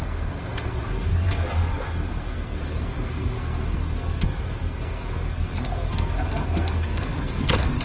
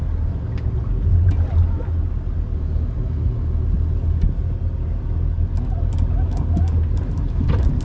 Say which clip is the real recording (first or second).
second